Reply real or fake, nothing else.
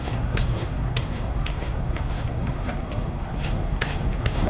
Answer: fake